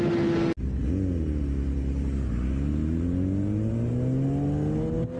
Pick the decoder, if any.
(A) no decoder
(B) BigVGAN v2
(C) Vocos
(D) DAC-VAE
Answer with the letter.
A